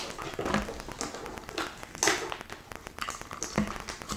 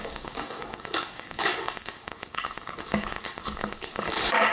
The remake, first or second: second